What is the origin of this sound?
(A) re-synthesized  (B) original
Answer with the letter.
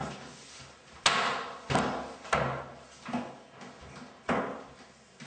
B